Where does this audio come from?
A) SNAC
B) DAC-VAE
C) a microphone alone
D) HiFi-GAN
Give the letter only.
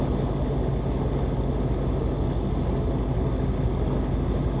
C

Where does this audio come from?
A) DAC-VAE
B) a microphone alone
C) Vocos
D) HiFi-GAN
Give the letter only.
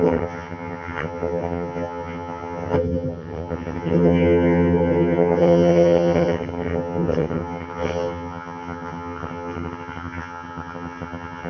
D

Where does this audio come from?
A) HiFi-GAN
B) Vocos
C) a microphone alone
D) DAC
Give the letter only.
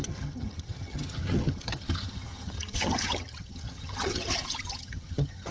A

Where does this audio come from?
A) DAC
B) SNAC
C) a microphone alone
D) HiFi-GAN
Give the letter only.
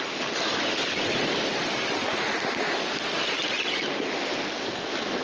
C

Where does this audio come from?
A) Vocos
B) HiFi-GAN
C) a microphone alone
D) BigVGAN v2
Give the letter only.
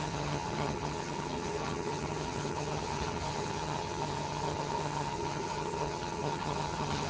B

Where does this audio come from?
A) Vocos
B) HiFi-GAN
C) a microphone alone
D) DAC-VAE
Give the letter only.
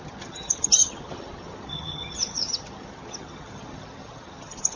B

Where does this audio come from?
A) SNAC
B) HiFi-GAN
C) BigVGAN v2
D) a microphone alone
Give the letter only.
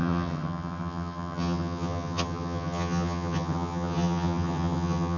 B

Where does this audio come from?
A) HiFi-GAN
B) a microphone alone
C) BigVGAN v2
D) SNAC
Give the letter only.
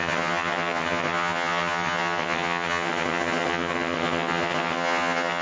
A